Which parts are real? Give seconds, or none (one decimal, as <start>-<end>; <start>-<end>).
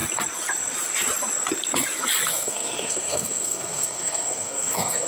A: 0.0-2.3